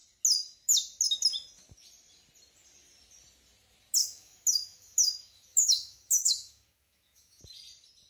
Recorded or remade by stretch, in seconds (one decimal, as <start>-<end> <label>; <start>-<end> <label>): 0.0-4.0 recorded; 4.0-7.4 remade; 7.4-8.1 recorded